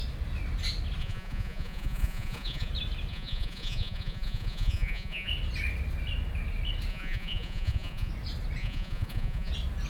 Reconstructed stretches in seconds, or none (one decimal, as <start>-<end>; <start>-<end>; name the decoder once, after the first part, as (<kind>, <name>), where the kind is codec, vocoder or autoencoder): 1.0-2.7 (vocoder, Vocos); 3.1-5.3; 6.9-8.1; 8.6-9.5

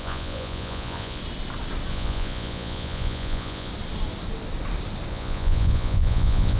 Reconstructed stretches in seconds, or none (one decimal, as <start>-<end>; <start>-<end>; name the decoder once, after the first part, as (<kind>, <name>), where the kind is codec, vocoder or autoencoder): 0.0-1.2 (vocoder, Vocos); 1.9-3.7; 5.1-6.6

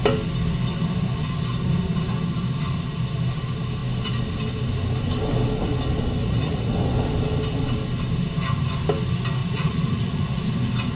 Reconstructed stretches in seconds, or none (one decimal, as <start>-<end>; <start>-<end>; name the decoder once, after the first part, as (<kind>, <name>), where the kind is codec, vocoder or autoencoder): 6.2-6.7 (vocoder, Vocos); 9.4-10.4

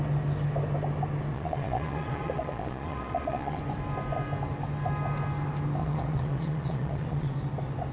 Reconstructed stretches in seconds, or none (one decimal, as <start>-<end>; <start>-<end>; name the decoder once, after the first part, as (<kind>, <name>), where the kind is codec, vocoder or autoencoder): 1.3-3.6 (vocoder, Vocos); 5.8-7.3

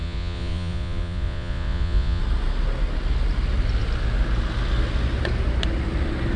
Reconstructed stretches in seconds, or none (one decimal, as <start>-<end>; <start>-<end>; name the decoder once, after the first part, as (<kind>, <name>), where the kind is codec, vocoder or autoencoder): 0.0-2.2 (vocoder, Vocos)

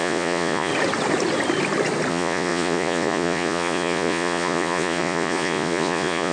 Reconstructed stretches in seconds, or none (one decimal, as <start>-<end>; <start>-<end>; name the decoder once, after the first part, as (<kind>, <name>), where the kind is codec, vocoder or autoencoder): 0.0-0.7 (vocoder, Vocos); 2.1-6.3

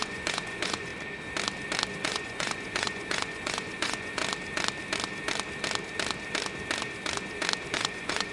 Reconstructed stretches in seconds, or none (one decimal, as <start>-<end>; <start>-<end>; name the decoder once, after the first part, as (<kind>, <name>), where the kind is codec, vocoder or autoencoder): 0.0-0.9 (vocoder, Vocos); 1.9-4.2; 7.7-8.3

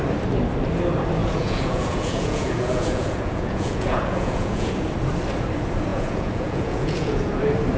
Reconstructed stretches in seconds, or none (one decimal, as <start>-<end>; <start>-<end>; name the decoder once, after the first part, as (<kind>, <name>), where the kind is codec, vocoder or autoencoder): 1.2-4.7 (vocoder, Vocos); 5.9-7.3